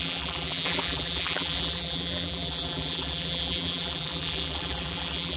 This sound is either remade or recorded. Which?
remade